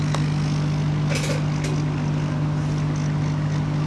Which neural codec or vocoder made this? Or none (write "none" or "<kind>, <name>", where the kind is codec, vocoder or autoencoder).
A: none